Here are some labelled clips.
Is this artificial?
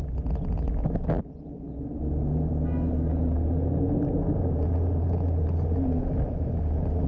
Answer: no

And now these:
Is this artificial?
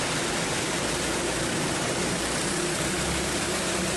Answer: no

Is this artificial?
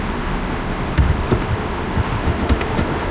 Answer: yes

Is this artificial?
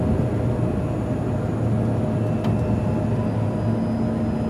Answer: no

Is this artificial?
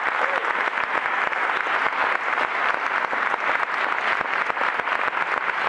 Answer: no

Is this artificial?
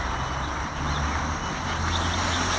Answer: no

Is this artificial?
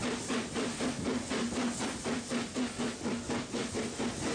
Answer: no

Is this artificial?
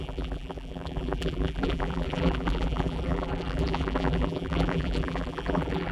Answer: yes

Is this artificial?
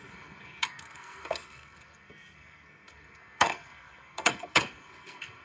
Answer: yes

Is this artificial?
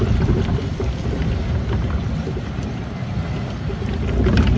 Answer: no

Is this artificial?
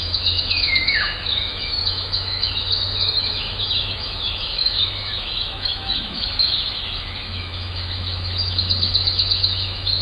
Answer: yes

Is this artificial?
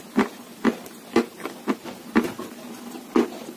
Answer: no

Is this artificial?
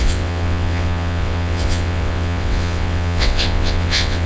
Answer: yes